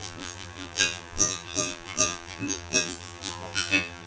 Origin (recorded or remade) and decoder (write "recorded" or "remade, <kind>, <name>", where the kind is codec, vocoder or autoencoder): remade, vocoder, BigVGAN v2